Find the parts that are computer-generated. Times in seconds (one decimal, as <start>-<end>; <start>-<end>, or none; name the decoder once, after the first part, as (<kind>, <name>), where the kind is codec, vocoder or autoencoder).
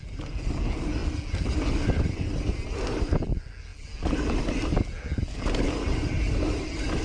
none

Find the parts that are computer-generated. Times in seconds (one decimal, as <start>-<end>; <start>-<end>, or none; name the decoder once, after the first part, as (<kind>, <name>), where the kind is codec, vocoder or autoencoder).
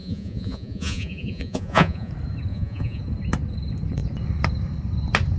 0.0-2.1 (vocoder, Vocos); 2.5-3.0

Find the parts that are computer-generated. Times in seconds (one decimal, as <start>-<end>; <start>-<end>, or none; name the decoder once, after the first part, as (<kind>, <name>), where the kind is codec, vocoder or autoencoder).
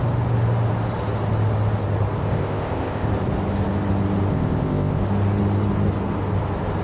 2.2-3.1 (codec, ZipCodec); 4.3-5.0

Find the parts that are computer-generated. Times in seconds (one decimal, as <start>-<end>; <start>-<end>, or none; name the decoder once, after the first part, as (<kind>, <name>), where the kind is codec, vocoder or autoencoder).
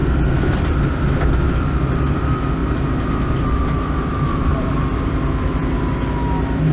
none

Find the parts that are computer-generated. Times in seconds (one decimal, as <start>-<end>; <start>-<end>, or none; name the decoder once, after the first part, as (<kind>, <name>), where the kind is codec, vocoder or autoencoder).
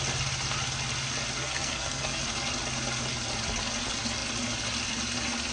1.4-2.2 (codec, SNAC)